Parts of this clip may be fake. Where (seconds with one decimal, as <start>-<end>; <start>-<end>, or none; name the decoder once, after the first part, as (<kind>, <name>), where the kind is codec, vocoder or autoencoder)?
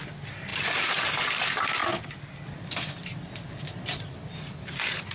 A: none